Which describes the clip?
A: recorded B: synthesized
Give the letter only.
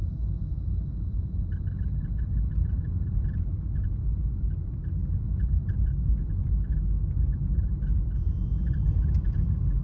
A